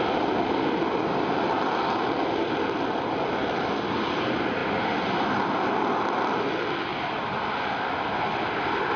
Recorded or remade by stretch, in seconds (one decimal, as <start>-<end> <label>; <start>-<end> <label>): 0.0-4.6 recorded; 4.6-6.2 remade; 6.2-9.0 recorded

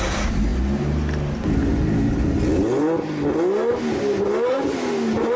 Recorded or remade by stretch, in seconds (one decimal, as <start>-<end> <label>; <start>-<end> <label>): 0.0-0.5 remade; 0.5-3.7 recorded; 3.7-5.4 remade

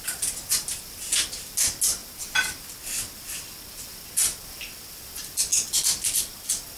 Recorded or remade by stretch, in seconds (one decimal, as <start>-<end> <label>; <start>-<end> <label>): 0.0-6.8 recorded

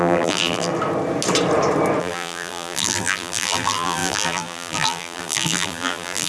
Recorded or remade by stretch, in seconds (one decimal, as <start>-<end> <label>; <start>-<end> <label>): 0.0-0.7 remade; 0.7-2.0 recorded; 2.0-6.3 remade

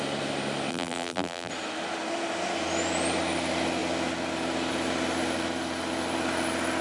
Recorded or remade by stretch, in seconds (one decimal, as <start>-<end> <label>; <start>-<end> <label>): 0.0-0.7 recorded; 0.7-1.5 remade; 1.5-6.8 recorded

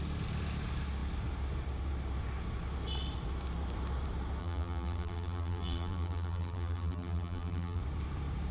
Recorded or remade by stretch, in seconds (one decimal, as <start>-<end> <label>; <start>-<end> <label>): 0.0-4.4 recorded; 4.4-7.8 remade; 7.8-8.5 recorded

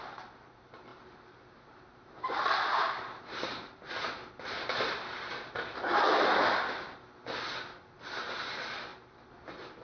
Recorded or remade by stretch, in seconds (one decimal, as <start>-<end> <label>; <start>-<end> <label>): 0.0-0.9 recorded; 0.9-3.9 remade; 3.9-8.9 recorded; 8.9-9.8 remade

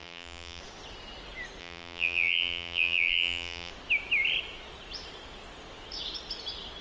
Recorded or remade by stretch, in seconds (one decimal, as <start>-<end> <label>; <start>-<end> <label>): 0.0-0.6 remade; 0.6-1.6 recorded; 1.6-3.7 remade; 3.7-6.8 recorded